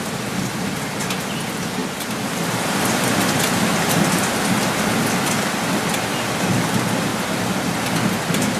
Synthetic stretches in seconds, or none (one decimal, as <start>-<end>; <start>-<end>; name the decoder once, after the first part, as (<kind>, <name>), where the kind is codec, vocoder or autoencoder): 7.1-7.8 (vocoder, BigVGAN v2)